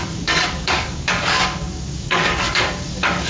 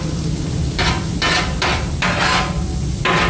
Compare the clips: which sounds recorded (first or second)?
second